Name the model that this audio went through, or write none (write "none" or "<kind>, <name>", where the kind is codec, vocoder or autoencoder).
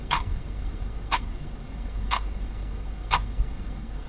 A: codec, SNAC